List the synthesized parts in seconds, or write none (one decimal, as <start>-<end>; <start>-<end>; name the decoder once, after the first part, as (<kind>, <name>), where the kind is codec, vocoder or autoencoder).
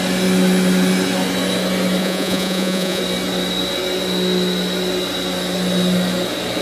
2.0-3.0 (vocoder, Vocos)